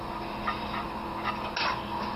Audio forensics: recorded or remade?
recorded